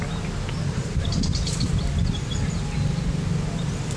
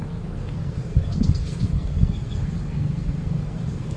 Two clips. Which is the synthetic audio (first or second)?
second